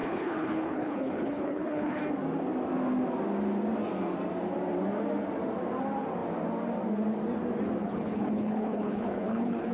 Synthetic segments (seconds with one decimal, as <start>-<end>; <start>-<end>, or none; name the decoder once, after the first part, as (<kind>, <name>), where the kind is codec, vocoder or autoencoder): 0.0-2.0 (codec, HILCodec); 7.8-9.7